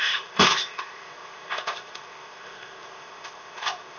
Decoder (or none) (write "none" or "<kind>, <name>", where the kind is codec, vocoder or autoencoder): codec, ZipCodec